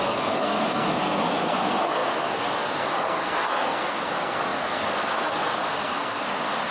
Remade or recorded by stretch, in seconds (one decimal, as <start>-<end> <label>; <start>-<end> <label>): 0.0-6.7 remade